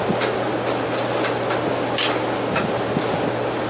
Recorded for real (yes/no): yes